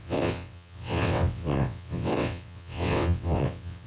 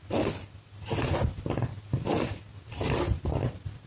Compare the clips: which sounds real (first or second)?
second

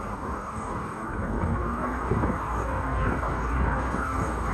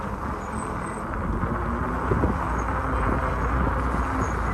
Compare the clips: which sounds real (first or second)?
second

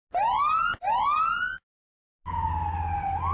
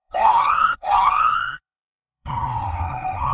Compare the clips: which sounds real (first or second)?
first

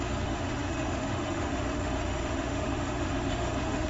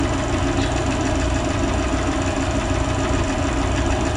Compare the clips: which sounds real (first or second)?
second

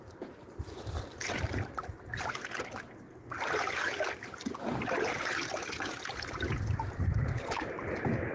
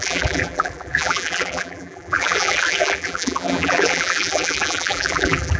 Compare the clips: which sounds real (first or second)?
first